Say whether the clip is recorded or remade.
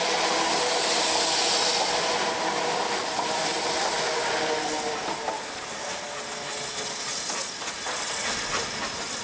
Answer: recorded